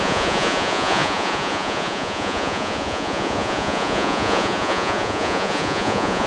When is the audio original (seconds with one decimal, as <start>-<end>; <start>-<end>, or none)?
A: none